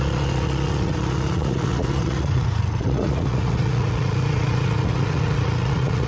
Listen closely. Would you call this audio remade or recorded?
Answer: remade